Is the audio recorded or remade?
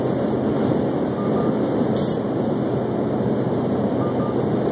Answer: recorded